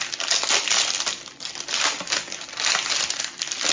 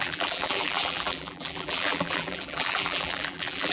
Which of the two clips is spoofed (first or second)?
second